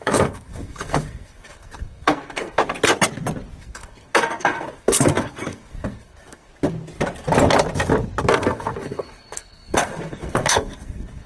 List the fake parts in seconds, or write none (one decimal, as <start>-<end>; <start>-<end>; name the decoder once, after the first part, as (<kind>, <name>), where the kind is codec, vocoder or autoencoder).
0.0-2.6 (codec, SNAC); 3.6-6.5; 8.3-11.3